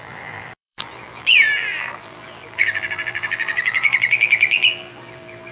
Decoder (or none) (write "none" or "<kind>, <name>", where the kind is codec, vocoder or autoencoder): vocoder, BigVGAN v2